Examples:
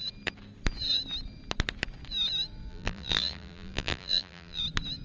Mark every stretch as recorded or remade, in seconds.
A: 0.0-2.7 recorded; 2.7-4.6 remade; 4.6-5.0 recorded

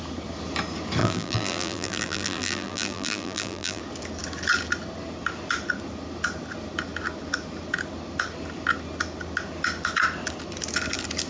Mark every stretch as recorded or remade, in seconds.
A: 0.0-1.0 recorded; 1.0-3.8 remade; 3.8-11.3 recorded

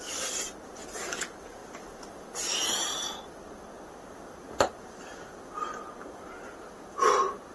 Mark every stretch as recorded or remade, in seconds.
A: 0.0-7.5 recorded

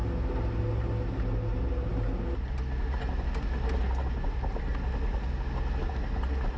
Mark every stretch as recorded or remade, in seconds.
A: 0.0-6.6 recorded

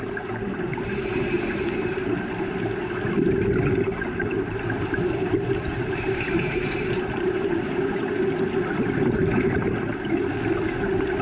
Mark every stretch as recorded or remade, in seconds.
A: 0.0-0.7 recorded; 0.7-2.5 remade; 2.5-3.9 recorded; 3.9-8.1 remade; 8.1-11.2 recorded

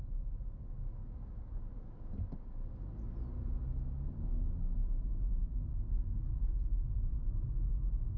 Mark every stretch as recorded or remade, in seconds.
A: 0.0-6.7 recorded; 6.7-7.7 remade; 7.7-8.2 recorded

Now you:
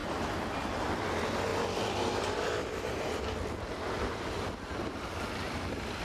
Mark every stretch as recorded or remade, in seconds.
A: 0.0-1.5 recorded; 1.5-5.1 remade; 5.1-6.0 recorded

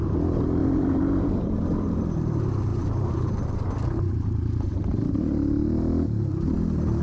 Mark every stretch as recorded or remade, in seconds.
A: 0.0-0.6 recorded; 0.6-2.0 remade; 2.0-2.7 recorded; 2.7-5.2 remade; 5.2-7.0 recorded